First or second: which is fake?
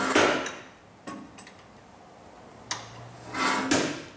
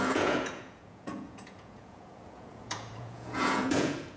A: second